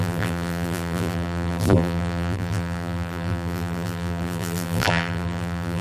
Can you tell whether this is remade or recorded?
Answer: remade